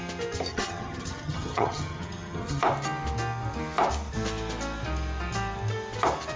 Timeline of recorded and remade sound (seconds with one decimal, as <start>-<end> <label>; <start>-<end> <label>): 0.0-0.5 recorded; 0.5-2.6 remade; 2.6-6.4 recorded

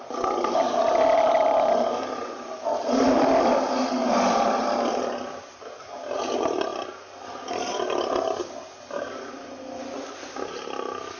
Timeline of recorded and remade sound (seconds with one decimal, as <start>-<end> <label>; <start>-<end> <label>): 0.0-11.2 recorded

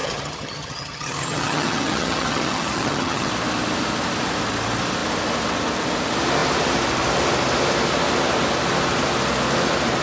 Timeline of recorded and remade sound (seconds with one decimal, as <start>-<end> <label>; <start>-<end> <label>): 0.0-3.3 remade; 3.3-10.0 recorded

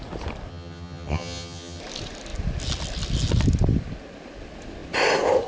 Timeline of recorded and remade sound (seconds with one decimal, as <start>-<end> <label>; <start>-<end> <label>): 0.0-0.5 recorded; 0.5-1.8 remade; 1.8-5.5 recorded